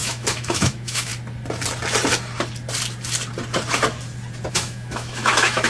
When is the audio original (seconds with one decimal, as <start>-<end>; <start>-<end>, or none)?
1.1-4.5